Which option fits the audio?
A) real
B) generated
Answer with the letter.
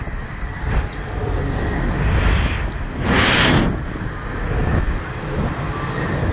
A